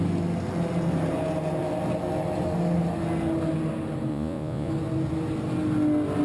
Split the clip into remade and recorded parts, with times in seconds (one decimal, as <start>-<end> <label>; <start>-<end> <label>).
0.0-4.1 recorded; 4.1-4.7 remade; 4.7-6.2 recorded